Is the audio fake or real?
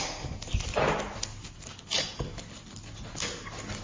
real